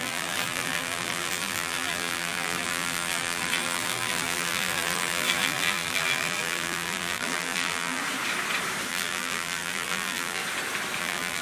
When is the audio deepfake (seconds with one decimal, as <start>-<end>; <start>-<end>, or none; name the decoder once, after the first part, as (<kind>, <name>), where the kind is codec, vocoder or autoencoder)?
0.0-8.0 (vocoder, BigVGAN v2); 8.9-10.4; 11.0-11.4